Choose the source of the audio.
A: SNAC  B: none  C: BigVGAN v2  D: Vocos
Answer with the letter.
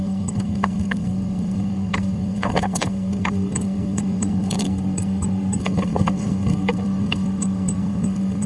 A